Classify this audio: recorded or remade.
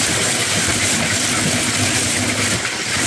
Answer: recorded